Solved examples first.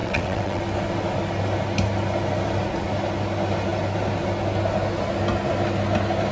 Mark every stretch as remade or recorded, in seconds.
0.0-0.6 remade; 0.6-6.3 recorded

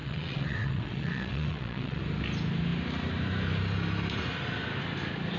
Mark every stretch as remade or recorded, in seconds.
0.0-2.0 remade; 2.0-5.4 recorded

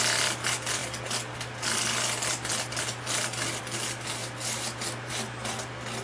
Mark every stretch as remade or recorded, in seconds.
0.0-6.0 recorded

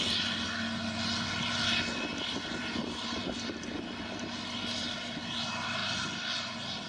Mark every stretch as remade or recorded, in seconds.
0.0-6.9 recorded

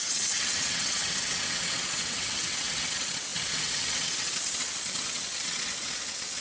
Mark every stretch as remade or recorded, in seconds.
0.0-6.4 remade

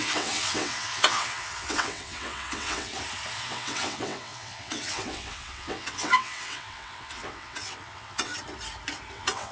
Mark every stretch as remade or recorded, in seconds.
0.0-2.9 remade; 2.9-3.4 recorded; 3.4-8.3 remade; 8.3-9.1 recorded; 9.1-9.5 remade